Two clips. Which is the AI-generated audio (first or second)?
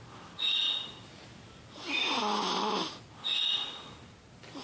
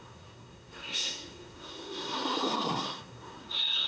second